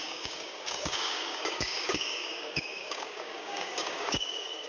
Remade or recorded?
remade